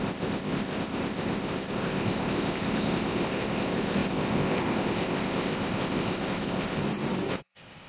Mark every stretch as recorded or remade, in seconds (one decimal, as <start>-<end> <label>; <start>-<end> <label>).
0.0-6.8 remade; 6.8-7.3 recorded; 7.3-7.9 remade